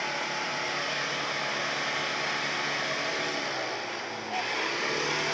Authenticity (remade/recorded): recorded